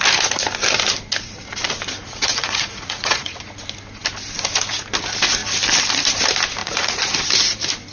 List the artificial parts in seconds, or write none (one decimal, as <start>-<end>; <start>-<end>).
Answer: 2.0-3.5; 6.6-7.1